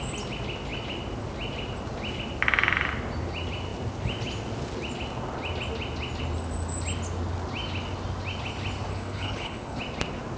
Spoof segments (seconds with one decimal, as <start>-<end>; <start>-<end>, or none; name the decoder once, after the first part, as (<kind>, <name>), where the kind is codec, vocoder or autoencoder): 8.9-9.8 (codec, HILCodec)